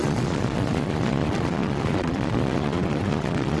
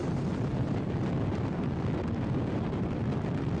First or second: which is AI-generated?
first